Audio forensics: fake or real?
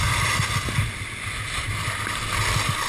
real